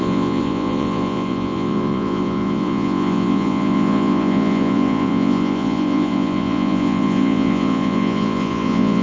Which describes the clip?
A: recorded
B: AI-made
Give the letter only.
B